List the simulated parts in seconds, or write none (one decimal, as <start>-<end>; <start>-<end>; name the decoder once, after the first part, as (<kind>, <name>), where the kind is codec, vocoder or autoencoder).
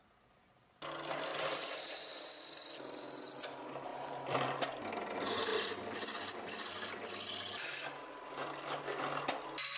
1.3-2.3 (vocoder, BigVGAN v2); 3.9-4.8